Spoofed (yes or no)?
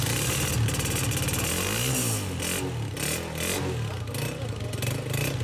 no